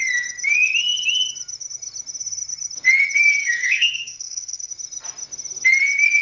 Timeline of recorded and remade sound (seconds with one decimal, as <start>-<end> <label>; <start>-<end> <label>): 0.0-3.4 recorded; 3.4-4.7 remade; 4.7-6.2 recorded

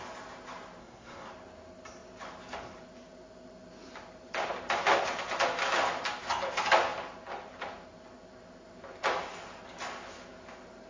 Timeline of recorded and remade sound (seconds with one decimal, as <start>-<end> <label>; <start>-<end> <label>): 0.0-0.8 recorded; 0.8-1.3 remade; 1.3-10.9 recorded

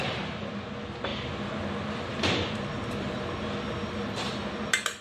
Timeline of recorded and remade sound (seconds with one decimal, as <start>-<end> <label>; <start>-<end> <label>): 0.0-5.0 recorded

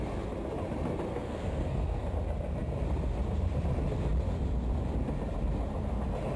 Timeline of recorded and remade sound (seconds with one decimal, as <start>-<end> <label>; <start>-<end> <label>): 0.0-1.1 recorded; 1.1-2.1 remade; 2.1-6.4 recorded

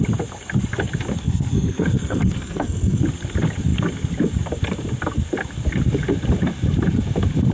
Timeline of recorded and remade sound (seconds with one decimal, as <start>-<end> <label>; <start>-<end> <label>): 0.0-1.2 recorded; 1.2-3.0 remade; 3.0-7.5 recorded